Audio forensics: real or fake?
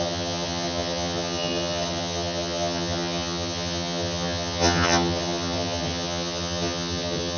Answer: fake